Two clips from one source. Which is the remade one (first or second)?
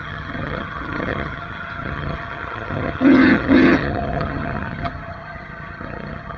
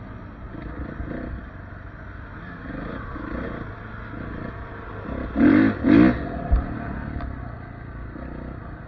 first